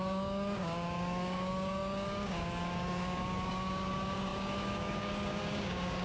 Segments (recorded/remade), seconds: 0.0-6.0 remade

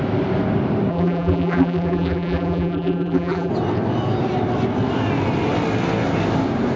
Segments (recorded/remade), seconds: 0.0-0.9 recorded; 0.9-3.5 remade; 3.5-6.8 recorded